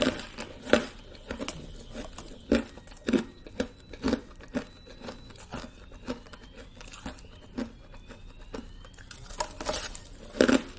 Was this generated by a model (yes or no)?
no